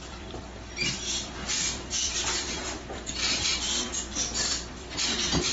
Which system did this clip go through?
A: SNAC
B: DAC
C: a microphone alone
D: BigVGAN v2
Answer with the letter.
D